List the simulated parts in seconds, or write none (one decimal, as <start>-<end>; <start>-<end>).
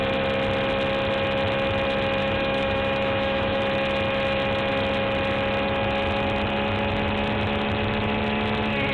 2.2-3.6